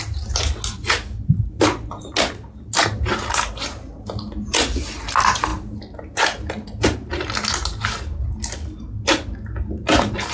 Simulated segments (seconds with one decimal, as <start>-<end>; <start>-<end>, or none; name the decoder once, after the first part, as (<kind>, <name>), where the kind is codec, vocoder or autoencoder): none

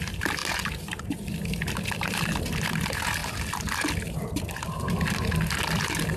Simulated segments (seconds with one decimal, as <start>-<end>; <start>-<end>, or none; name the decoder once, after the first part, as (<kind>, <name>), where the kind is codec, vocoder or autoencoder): none

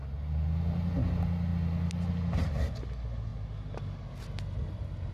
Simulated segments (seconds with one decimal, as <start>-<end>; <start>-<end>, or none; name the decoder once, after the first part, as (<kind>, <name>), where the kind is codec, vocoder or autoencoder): none

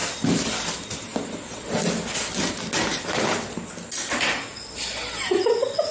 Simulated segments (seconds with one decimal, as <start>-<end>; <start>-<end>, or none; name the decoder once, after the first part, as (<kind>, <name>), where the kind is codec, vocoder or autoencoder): none

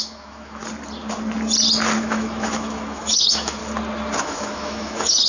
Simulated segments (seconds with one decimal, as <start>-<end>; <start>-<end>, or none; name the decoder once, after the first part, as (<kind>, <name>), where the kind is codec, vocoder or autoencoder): 0.0-0.6 (autoencoder, DAC-VAE); 2.0-3.6; 4.2-5.3

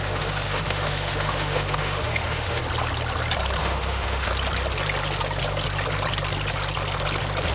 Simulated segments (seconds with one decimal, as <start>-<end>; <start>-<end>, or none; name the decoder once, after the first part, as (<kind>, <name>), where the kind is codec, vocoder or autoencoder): 0.0-2.6 (autoencoder, DAC-VAE); 3.6-4.3